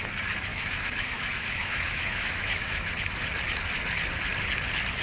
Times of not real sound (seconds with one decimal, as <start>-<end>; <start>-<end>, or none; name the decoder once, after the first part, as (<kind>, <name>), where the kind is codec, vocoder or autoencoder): 0.5-2.9 (autoencoder, DAC-VAE)